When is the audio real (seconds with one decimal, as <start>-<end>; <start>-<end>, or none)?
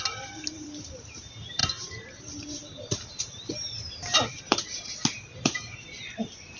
none